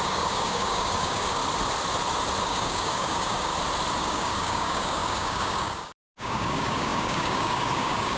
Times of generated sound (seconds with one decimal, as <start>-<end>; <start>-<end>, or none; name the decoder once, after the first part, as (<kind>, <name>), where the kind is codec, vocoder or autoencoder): 0.0-1.4 (codec, DAC); 2.4-3.5; 4.0-8.2